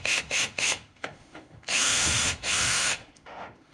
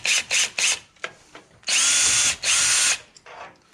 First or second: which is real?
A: second